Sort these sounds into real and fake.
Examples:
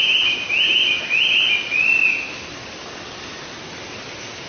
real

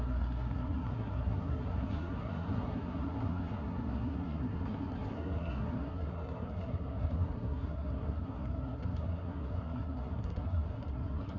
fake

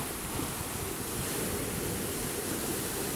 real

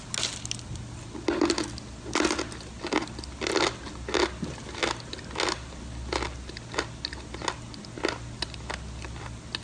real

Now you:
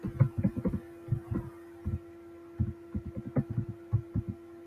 real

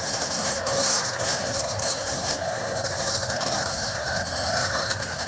fake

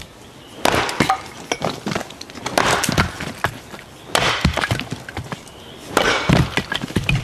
real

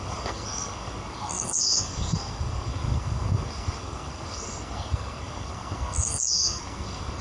fake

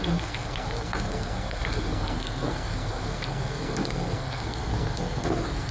fake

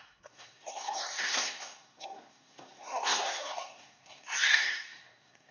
fake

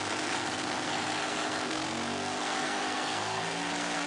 fake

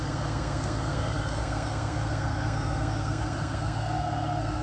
fake